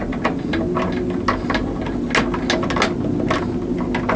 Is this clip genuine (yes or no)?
yes